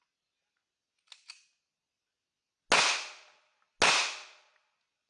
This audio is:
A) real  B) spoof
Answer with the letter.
A